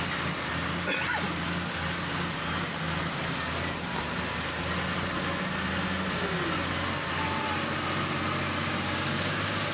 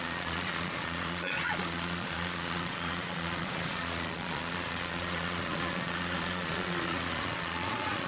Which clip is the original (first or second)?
first